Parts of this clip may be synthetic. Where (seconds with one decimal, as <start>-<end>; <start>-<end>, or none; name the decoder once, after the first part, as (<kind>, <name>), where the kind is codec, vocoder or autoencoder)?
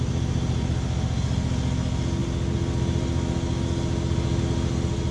none